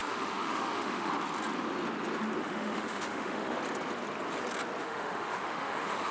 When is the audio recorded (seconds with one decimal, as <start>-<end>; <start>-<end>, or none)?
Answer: 1.1-2.4; 3.6-4.8